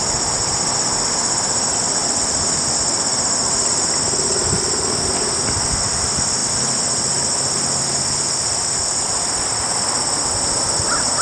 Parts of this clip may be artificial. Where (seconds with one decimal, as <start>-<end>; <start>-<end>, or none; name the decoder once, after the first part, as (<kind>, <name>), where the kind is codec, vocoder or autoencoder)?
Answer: none